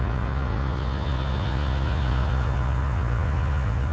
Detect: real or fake fake